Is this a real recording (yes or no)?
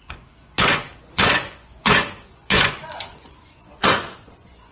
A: no